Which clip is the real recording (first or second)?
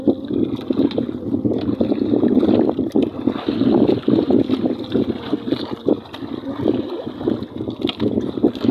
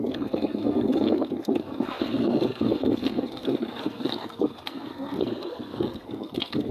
first